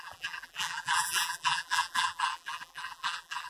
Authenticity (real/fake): fake